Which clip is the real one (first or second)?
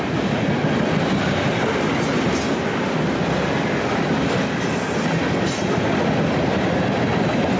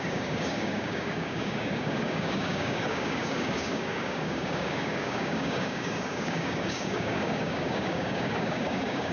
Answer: first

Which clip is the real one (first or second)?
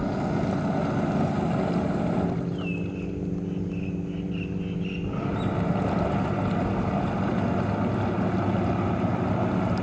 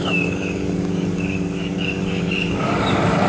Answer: first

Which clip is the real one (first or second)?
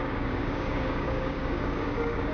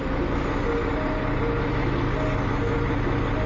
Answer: second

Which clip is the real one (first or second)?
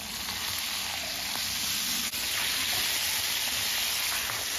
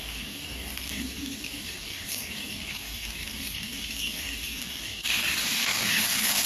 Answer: first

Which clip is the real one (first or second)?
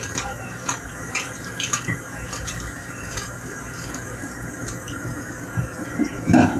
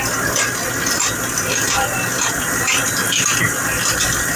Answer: second